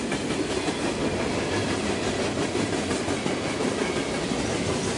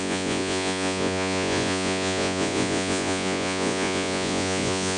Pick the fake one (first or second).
second